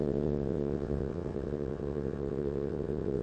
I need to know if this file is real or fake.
fake